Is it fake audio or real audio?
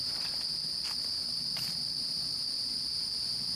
real